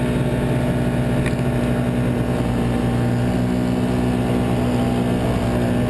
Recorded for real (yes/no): yes